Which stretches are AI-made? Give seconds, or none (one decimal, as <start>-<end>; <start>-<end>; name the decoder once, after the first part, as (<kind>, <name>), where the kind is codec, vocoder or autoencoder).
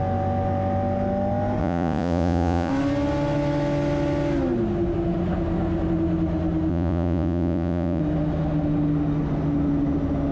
1.6-2.7 (vocoder, Vocos); 6.7-8.0